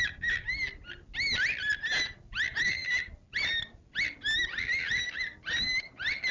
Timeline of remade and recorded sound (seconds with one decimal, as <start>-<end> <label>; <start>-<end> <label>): 0.0-6.3 recorded